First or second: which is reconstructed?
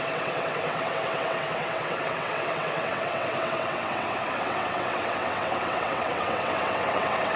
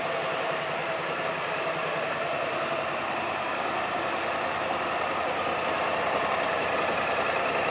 first